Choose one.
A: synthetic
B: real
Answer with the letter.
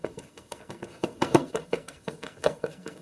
A